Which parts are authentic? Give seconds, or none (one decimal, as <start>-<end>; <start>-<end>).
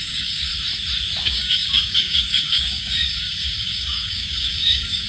0.5-1.2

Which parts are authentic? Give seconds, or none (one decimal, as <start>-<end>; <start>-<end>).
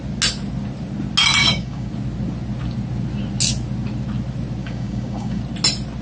0.0-1.4; 1.9-4.6; 5.4-6.0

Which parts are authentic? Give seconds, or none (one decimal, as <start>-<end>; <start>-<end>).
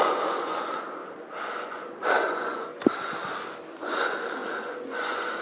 1.0-1.6; 2.7-3.7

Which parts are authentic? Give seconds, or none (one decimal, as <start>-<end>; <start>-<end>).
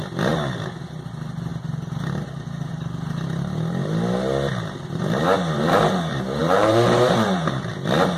0.0-6.4; 7.7-8.2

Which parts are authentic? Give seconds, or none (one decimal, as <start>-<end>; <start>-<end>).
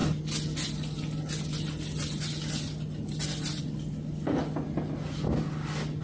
0.0-6.0